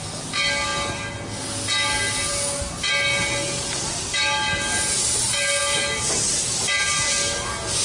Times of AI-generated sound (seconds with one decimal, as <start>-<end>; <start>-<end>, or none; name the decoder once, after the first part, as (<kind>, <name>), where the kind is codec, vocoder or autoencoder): none